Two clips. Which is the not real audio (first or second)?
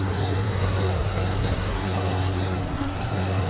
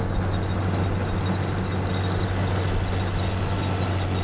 first